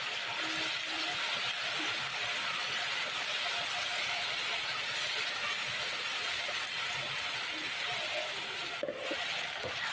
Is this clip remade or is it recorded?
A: recorded